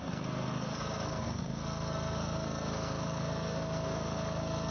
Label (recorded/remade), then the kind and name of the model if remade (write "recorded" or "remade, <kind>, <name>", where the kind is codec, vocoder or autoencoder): remade, codec, SNAC